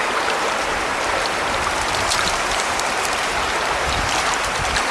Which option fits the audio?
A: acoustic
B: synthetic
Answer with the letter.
B